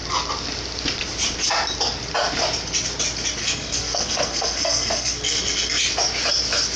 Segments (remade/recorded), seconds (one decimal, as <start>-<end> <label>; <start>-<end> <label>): 0.0-3.4 recorded; 3.4-5.8 remade; 5.8-6.8 recorded